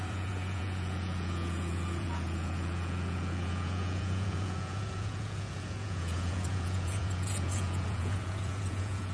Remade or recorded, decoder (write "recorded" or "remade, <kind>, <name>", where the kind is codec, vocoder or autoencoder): remade, vocoder, Vocos